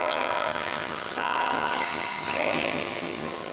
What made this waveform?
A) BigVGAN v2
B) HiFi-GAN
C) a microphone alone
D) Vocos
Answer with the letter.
B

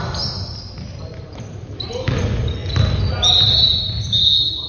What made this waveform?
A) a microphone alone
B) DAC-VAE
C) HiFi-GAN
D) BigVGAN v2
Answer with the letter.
A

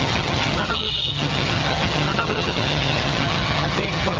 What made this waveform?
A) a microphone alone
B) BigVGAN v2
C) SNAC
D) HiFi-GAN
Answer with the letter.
D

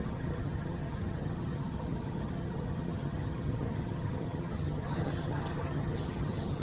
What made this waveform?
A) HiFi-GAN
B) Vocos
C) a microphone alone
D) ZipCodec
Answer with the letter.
A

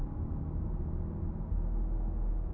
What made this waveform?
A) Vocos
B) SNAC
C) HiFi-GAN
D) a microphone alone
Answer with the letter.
D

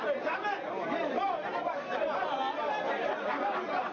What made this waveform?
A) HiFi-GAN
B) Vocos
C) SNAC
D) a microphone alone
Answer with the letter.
D